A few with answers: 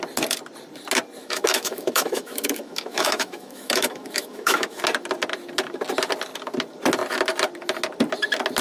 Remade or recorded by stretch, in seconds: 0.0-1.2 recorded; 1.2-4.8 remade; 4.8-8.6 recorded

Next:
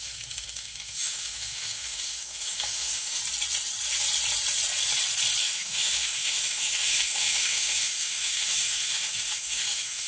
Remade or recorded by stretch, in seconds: 0.0-3.2 remade; 3.2-5.4 recorded; 5.4-10.1 remade